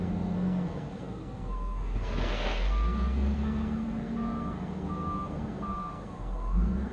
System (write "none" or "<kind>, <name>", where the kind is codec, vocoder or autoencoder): codec, SNAC